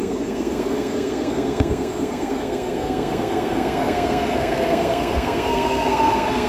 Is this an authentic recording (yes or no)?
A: no